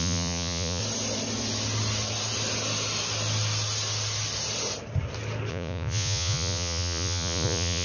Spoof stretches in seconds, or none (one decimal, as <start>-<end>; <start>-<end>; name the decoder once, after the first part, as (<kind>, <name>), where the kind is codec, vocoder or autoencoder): 0.0-0.8 (vocoder, Vocos); 5.5-7.8